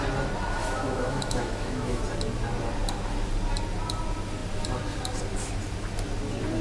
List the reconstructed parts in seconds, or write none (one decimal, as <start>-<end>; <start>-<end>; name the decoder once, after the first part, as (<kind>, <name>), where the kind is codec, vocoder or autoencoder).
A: 0.6-2.0 (autoencoder, DAC-VAE)